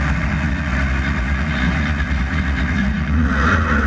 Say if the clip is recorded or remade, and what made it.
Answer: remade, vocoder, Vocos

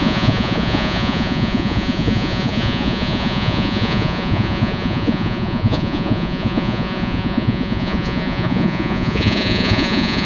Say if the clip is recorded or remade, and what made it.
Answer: remade, vocoder, Vocos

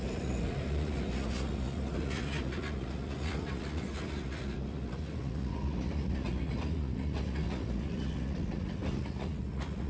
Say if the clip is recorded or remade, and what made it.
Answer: remade, vocoder, Vocos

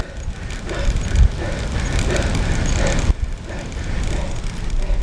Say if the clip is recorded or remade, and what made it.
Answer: recorded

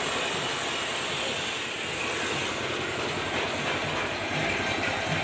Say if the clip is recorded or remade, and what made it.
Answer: recorded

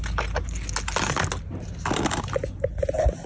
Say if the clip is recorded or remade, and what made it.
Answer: recorded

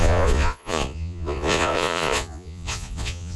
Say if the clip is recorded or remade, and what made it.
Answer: remade, vocoder, Vocos